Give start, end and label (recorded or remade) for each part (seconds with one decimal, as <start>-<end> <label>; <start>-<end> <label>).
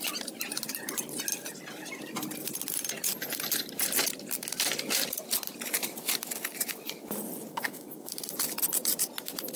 0.0-7.5 recorded; 7.5-8.1 remade; 8.1-9.6 recorded